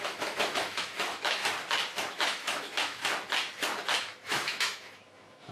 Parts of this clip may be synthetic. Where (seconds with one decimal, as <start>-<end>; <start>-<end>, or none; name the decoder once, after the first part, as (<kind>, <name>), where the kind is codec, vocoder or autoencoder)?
0.0-1.4 (autoencoder, DAC-VAE); 2.1-3.0; 4.0-5.5